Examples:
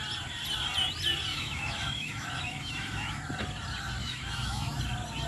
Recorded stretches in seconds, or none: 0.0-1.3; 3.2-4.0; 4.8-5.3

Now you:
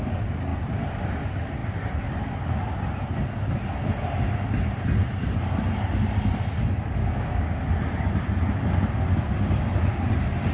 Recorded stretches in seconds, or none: 0.0-7.0; 7.6-10.5

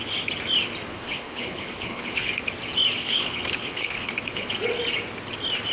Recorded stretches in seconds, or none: 0.0-0.9; 2.3-3.0; 4.5-5.7

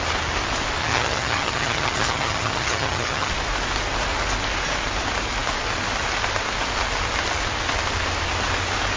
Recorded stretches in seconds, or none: 0.0-0.8; 3.3-9.0

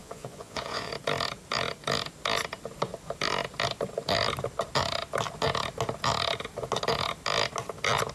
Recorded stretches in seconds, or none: 0.9-8.1